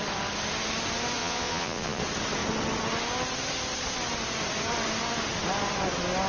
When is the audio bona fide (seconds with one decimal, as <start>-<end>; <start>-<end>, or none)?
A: 0.0-1.2; 2.0-6.3